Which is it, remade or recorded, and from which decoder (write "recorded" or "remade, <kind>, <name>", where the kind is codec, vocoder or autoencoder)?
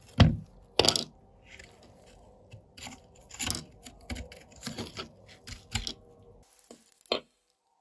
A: recorded